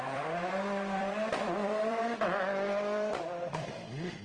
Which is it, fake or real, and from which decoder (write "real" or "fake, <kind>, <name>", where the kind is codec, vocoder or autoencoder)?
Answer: fake, vocoder, BigVGAN v2